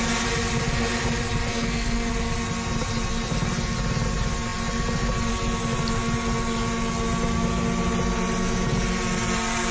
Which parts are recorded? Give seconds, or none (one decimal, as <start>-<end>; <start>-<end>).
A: 0.0-1.5; 2.1-9.7